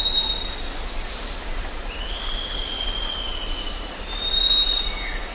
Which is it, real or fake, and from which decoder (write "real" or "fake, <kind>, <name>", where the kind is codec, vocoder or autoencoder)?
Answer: real